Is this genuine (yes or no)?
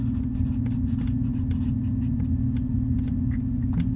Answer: yes